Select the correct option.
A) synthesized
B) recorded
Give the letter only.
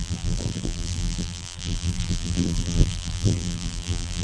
A